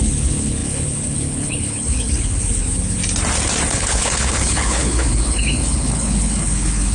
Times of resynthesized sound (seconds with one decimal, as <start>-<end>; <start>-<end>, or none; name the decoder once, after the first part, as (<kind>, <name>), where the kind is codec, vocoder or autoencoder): 0.0-3.0 (codec, HILCodec); 3.7-6.9